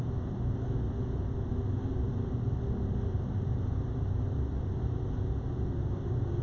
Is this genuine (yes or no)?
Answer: yes